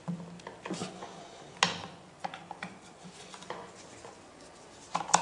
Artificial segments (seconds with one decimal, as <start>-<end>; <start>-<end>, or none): 0.8-1.4; 1.8-4.7